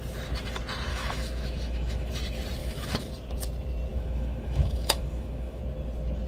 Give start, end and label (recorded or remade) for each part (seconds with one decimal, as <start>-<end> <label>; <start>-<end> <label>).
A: 0.0-0.9 recorded; 0.9-2.1 remade; 2.1-2.6 recorded; 2.6-3.1 remade; 3.1-3.9 recorded; 3.9-5.6 remade; 5.6-6.3 recorded